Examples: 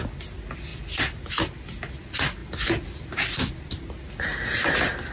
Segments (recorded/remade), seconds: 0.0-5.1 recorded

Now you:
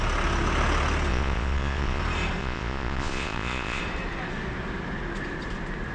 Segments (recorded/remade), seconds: 0.0-1.1 recorded; 1.1-2.0 remade; 2.0-2.4 recorded; 2.4-3.8 remade; 3.8-5.9 recorded

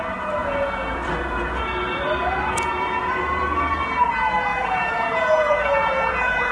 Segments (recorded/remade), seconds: 0.0-0.4 recorded; 0.4-1.6 remade; 1.6-4.5 recorded; 4.5-6.5 remade